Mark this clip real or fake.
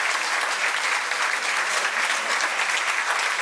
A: real